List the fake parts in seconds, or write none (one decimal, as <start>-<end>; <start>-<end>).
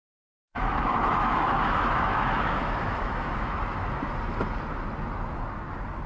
0.0-3.5